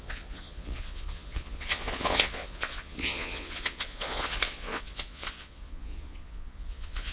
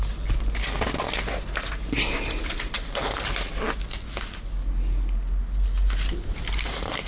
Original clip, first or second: second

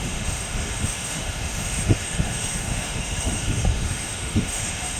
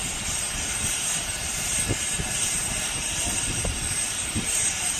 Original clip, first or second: second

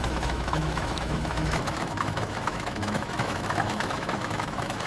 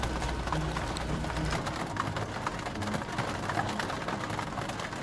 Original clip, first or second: second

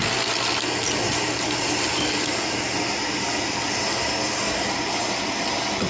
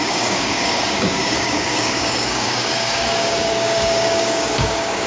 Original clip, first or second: first